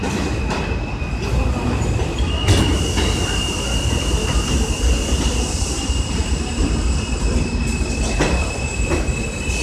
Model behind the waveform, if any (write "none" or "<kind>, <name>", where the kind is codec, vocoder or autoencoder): none